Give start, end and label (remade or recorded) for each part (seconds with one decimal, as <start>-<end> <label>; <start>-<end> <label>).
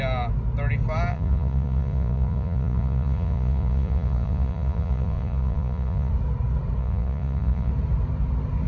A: 0.0-1.1 recorded; 1.1-6.1 remade; 6.1-6.8 recorded; 6.8-7.7 remade; 7.7-8.7 recorded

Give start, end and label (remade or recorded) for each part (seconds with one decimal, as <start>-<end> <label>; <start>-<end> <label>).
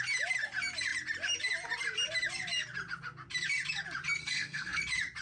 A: 0.0-4.2 recorded; 4.2-4.8 remade; 4.8-5.2 recorded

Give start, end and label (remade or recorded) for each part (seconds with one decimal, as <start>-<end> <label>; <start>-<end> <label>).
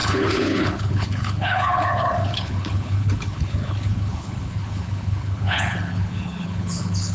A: 0.0-7.1 remade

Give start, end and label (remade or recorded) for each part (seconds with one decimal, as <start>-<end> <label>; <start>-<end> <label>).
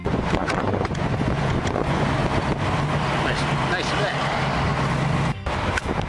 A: 0.0-2.2 remade; 2.2-6.1 recorded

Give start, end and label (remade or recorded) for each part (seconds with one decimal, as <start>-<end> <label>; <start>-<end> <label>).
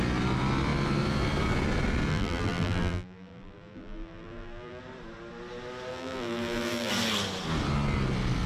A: 0.0-2.1 recorded; 2.1-4.8 remade; 4.8-5.9 recorded; 5.9-6.9 remade; 6.9-8.5 recorded